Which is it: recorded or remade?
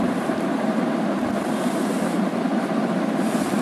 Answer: recorded